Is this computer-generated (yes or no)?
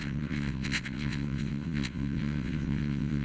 yes